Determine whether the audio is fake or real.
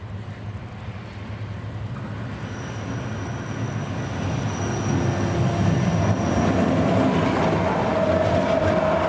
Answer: real